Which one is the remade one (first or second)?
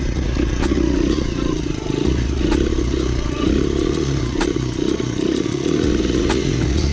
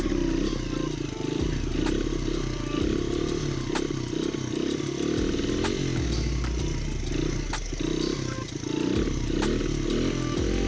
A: first